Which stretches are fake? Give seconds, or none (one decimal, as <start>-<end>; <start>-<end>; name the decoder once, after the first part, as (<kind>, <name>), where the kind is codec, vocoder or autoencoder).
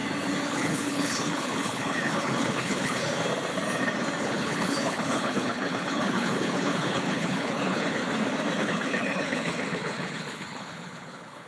0.5-3.1 (codec, HILCodec); 4.2-8.0; 8.6-11.5